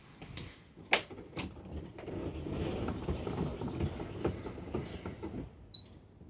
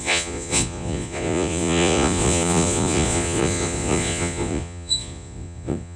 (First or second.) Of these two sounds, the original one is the first